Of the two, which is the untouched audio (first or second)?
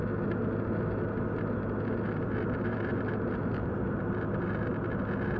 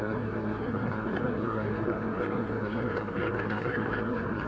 first